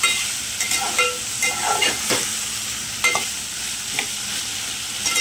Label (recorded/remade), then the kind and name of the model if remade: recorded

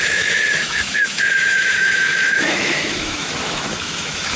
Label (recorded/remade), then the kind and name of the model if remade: remade, autoencoder, DAC-VAE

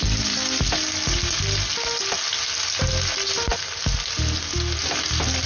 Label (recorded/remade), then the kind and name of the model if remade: recorded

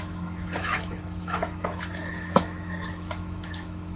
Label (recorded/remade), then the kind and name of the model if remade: remade, autoencoder, DAC-VAE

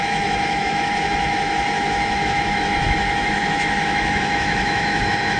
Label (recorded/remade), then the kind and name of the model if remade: remade, autoencoder, DAC-VAE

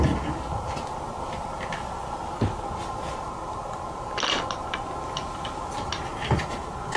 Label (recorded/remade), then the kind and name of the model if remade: recorded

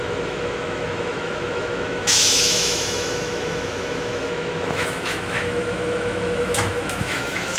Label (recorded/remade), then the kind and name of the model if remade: remade, autoencoder, DAC-VAE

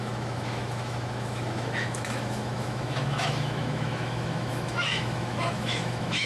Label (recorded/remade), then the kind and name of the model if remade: remade, autoencoder, DAC-VAE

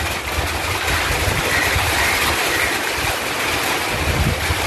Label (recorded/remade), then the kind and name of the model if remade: recorded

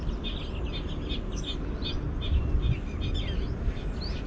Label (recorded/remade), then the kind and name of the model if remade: recorded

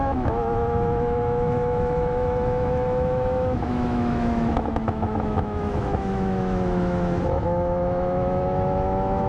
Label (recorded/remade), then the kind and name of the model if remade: remade, autoencoder, DAC-VAE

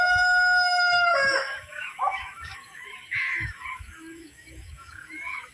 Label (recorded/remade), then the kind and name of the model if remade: remade, autoencoder, DAC-VAE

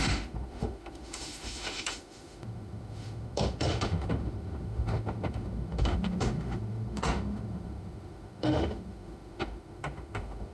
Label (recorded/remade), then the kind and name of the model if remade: remade, autoencoder, DAC-VAE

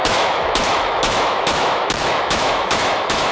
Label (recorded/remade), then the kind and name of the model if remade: remade, autoencoder, DAC-VAE